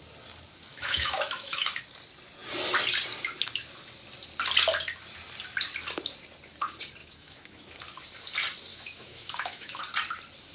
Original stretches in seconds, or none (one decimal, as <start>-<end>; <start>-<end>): 0.0-0.7; 1.8-7.0; 7.8-8.7; 9.8-10.5

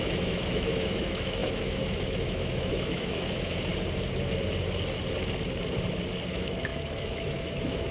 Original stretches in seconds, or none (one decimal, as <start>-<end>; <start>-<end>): 3.7-6.3

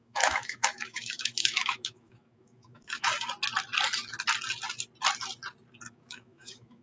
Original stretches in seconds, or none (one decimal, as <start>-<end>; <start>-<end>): 3.1-5.9